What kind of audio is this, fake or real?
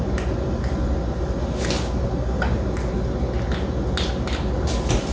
real